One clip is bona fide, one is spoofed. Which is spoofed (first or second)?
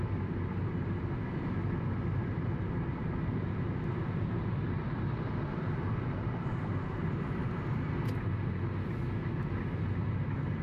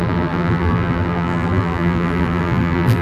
second